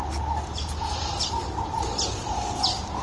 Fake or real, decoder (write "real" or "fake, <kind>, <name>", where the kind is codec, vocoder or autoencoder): real